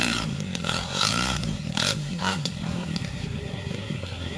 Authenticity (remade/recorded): remade